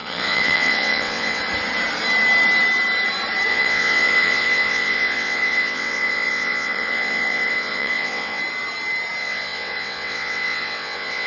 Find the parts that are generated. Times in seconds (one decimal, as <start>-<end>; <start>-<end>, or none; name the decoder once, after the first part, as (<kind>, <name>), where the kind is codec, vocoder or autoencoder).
0.0-1.4 (vocoder, WaveNeXt); 3.5-8.4; 9.2-11.3